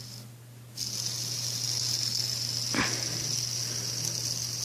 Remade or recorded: recorded